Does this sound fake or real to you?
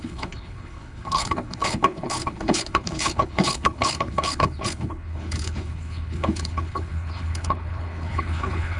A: fake